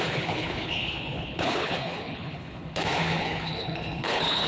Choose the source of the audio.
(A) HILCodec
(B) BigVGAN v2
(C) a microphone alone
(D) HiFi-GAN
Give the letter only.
A